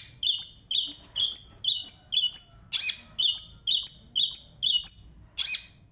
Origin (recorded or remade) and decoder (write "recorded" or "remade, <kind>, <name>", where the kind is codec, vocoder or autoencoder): recorded